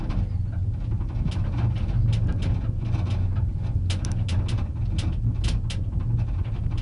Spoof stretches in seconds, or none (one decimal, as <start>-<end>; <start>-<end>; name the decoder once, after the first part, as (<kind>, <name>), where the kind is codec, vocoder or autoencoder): none